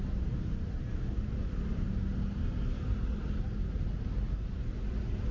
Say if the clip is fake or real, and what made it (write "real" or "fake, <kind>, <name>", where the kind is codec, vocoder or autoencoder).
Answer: real